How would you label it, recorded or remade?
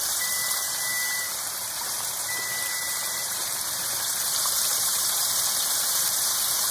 remade